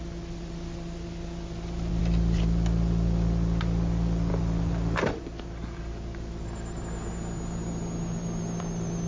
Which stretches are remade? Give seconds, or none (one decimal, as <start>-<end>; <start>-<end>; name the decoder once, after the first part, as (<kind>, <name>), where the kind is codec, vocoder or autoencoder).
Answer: none

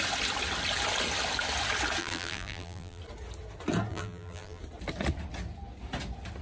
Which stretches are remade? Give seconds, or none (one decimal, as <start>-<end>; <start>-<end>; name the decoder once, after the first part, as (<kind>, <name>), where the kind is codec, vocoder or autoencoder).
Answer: 2.0-3.0 (vocoder, BigVGAN v2); 3.9-4.6

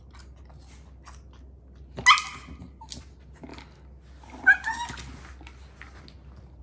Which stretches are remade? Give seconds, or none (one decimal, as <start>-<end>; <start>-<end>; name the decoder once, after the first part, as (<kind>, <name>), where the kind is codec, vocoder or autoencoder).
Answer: none

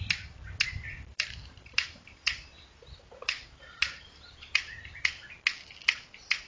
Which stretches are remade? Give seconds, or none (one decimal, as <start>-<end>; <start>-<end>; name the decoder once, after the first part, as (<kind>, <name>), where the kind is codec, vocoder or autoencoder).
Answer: 1.1-5.0 (vocoder, BigVGAN v2)

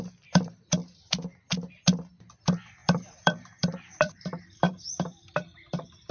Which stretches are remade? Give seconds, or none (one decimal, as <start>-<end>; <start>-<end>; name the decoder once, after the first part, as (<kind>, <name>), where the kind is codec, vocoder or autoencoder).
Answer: 2.8-6.1 (vocoder, BigVGAN v2)

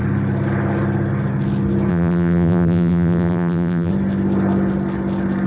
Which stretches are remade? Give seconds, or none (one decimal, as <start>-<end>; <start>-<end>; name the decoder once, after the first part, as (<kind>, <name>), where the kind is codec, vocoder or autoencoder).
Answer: 1.9-3.9 (vocoder, BigVGAN v2)

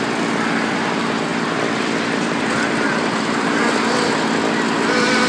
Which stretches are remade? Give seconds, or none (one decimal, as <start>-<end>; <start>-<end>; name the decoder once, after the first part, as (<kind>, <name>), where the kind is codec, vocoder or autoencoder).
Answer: 1.3-3.5 (vocoder, BigVGAN v2)

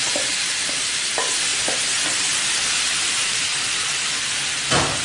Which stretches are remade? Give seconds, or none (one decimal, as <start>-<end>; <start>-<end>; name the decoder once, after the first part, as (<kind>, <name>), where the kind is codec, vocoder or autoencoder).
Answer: 0.0-1.5 (vocoder, BigVGAN v2); 2.7-3.5